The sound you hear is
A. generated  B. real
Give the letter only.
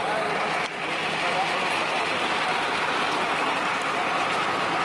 B